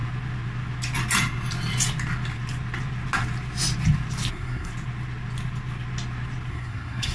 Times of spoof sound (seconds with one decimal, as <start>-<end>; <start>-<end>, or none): 4.3-4.7; 6.5-7.1